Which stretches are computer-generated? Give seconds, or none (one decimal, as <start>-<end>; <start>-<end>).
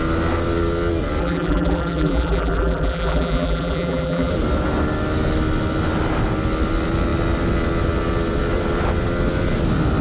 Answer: 1.2-4.3